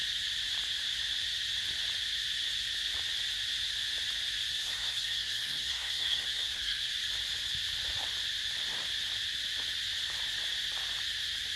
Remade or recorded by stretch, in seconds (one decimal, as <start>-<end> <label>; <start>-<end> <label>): 0.0-4.5 recorded; 4.5-6.9 remade; 6.9-11.6 recorded